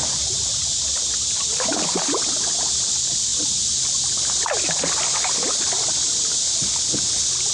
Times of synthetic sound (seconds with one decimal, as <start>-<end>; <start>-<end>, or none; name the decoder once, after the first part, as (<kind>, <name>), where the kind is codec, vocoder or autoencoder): none